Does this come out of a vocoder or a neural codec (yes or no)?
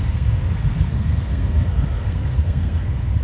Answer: yes